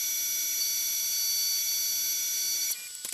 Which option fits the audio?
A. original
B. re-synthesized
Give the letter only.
A